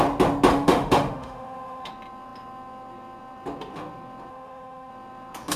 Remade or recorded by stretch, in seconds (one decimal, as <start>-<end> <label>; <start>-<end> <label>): 0.0-0.5 recorded; 0.5-1.9 remade; 1.9-4.3 recorded; 4.3-4.9 remade; 4.9-5.6 recorded